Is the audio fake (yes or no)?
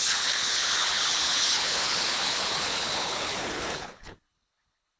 yes